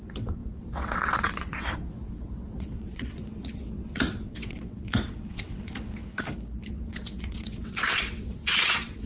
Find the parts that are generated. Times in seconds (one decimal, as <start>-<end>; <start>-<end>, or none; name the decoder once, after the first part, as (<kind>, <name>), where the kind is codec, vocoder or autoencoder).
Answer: 0.0-6.0 (vocoder, WaveNeXt); 6.7-9.1